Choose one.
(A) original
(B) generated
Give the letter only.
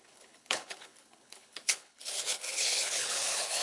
B